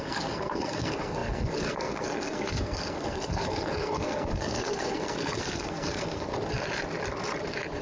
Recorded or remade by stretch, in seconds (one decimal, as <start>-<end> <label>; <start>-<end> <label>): 0.0-6.3 remade; 6.3-7.8 recorded